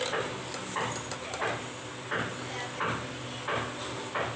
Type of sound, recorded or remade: recorded